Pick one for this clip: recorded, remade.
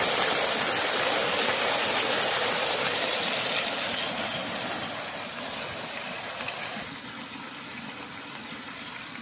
recorded